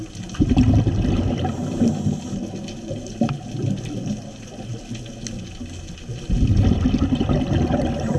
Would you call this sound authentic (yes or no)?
yes